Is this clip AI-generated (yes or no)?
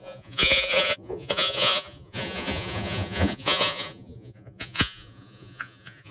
yes